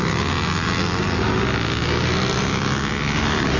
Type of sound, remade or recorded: recorded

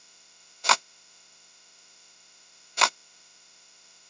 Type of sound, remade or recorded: remade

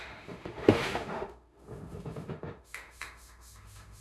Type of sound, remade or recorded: remade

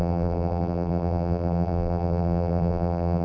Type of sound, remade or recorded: remade